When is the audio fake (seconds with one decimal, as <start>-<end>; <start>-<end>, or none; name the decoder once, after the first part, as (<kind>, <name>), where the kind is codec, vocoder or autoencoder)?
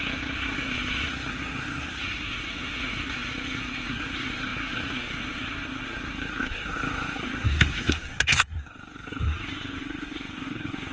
0.0-10.9 (codec, SNAC)